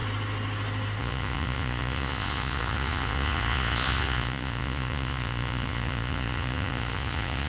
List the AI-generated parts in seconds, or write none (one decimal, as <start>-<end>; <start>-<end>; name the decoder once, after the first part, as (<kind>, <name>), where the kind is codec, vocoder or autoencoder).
1.0-7.5 (vocoder, Vocos)

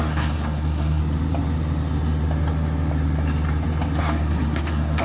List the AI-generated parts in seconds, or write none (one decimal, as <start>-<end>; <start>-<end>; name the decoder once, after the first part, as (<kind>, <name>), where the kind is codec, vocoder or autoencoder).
0.0-1.0 (codec, SNAC); 4.0-5.0

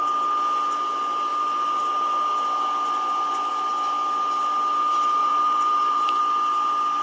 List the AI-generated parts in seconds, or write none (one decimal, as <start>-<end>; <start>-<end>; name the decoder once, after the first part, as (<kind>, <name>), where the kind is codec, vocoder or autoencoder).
5.2-6.2 (vocoder, BigVGAN v2)

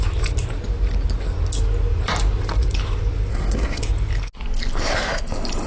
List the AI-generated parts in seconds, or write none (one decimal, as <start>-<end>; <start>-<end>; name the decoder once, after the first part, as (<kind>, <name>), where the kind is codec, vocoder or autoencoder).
3.3-3.8 (codec, SNAC)

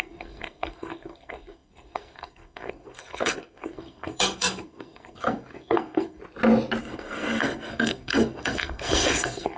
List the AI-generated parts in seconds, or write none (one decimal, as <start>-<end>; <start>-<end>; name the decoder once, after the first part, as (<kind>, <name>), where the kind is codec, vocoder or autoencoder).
0.0-6.2 (codec, SNAC); 6.8-9.6

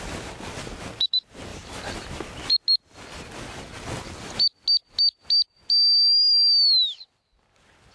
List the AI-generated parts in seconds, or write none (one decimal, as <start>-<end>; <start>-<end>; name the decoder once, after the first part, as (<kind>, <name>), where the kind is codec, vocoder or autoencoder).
none